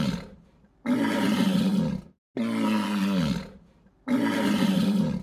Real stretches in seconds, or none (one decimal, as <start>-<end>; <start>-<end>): 1.7-3.6

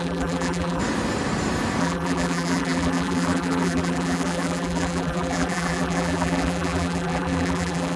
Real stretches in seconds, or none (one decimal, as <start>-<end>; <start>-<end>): 0.8-1.8

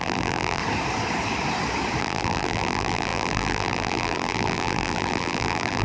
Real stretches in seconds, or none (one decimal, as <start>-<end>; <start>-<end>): 0.6-2.0

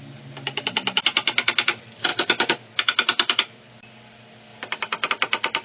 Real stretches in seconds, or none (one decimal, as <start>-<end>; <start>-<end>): 0.0-5.6

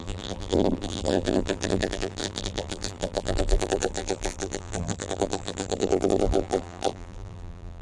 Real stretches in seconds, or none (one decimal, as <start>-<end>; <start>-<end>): none

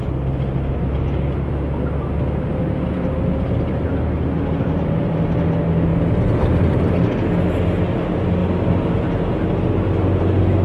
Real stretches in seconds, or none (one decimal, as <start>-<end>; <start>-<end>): 0.0-10.6